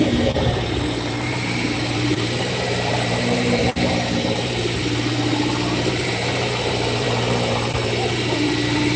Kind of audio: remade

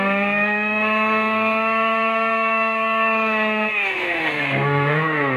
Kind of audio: remade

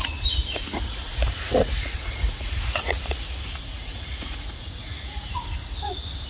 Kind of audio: remade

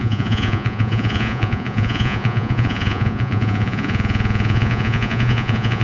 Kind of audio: remade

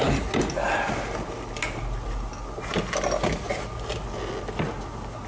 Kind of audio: recorded